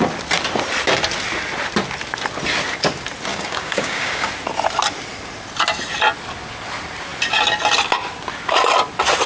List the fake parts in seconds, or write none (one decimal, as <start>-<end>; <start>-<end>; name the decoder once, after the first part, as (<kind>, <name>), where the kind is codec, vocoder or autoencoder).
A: 3.3-4.3 (codec, DAC)